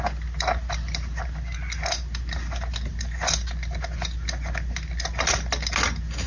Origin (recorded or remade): recorded